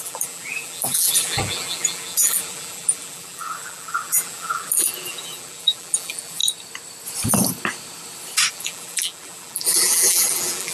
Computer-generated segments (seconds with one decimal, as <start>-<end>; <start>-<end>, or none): 0.0-6.4; 8.5-10.7